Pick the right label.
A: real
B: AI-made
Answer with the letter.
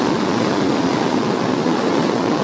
B